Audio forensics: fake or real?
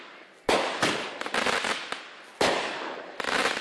real